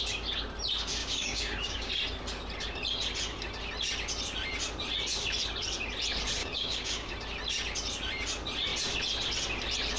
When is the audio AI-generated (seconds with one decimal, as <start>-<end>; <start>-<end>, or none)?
1.0-1.9; 6.4-7.1